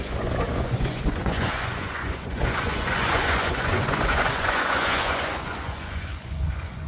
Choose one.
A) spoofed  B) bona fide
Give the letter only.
A